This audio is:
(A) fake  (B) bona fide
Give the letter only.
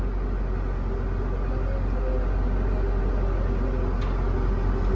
B